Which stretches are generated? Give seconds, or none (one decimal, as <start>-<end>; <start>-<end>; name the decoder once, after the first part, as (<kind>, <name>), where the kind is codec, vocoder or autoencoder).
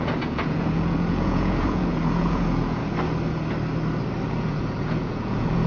0.0-2.8 (vocoder, Vocos); 4.3-5.7